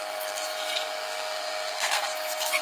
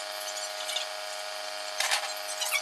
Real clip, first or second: second